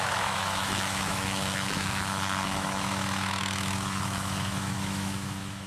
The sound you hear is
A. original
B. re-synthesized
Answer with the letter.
B